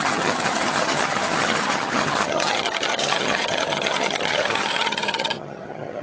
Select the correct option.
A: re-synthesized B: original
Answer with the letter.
A